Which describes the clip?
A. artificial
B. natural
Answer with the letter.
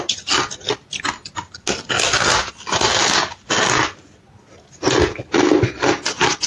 B